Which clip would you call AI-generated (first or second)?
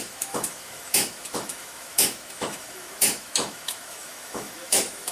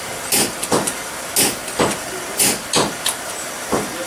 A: first